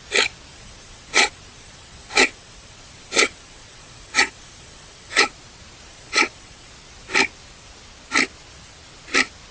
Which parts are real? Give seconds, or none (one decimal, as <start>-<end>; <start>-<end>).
0.0-0.5; 5.3-5.9; 6.7-9.5